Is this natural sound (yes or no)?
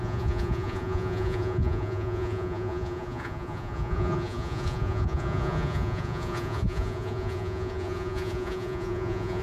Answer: no